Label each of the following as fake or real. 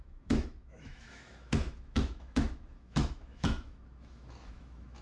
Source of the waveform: fake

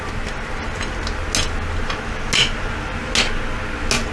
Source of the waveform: real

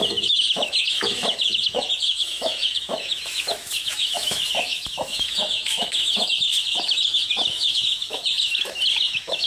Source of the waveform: fake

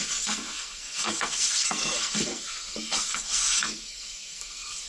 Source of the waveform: fake